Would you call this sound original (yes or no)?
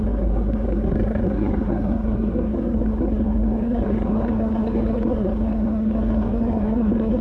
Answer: no